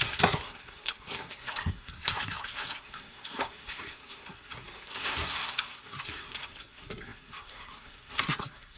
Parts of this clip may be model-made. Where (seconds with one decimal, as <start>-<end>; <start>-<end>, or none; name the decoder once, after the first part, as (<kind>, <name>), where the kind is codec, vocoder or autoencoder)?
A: 0.0-8.8 (codec, SNAC)